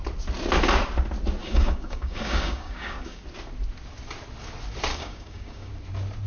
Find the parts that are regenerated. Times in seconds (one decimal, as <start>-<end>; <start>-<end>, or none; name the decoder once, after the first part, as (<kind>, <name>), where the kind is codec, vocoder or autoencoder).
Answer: 1.4-3.2 (codec, DAC); 4.9-5.7